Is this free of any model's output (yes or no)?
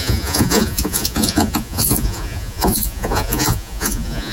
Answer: no